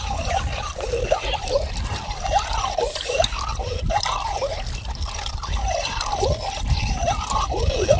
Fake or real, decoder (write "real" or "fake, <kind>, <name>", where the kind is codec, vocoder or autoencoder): real